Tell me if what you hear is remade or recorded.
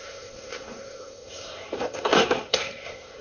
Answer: remade